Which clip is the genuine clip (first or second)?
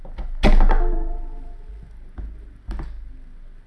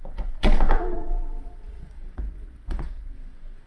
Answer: first